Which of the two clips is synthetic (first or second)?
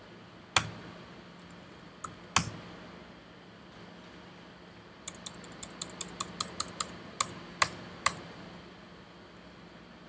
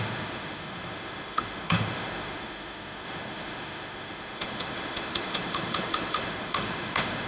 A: second